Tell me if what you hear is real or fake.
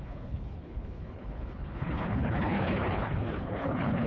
fake